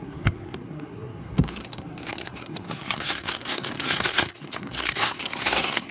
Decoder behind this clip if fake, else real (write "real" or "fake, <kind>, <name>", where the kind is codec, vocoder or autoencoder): fake, codec, SNAC